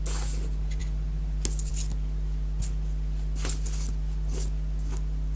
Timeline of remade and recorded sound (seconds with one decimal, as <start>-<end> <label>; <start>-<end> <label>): 0.0-5.4 recorded